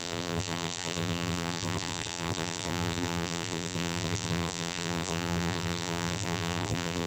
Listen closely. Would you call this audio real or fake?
fake